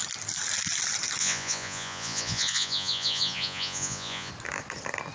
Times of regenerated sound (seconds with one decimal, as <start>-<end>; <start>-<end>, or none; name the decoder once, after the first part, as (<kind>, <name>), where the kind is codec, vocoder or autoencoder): 1.2-4.3 (vocoder, Vocos)